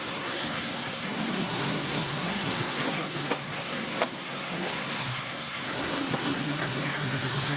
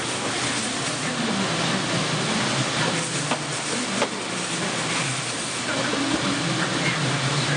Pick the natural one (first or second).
second